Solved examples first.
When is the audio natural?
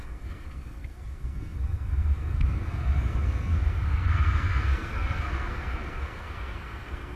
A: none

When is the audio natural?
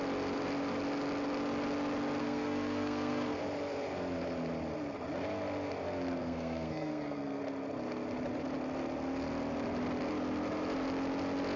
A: 0.0-2.2; 3.4-6.2; 7.4-11.6